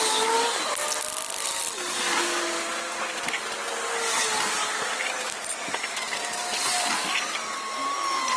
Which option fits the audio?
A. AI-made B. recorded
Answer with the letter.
B